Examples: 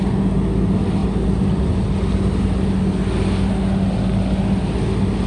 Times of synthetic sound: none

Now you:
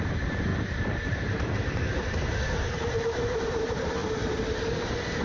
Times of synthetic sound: 0.0-4.0 (vocoder, BigVGAN v2)

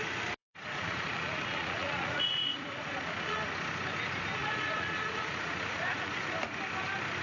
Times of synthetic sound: 0.4-3.4 (vocoder, Vocos); 4.4-6.3

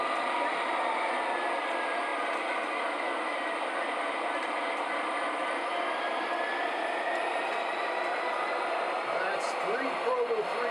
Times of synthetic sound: none